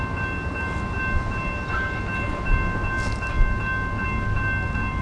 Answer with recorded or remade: recorded